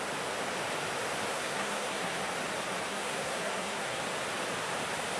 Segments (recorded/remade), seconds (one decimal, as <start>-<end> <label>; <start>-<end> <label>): 0.0-1.3 recorded; 1.3-2.2 remade; 2.2-2.9 recorded; 2.9-4.0 remade; 4.0-5.2 recorded